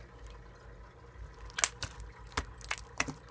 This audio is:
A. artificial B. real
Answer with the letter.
B